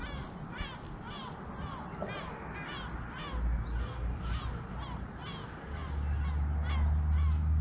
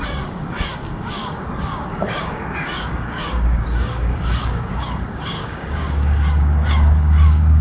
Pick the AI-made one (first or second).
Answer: second